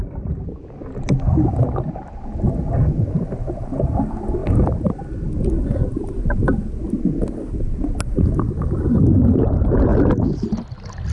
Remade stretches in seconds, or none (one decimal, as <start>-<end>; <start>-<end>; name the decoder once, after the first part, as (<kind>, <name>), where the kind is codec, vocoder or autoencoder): none